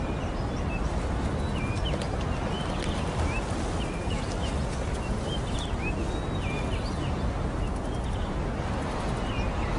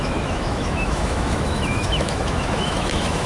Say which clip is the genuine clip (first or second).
first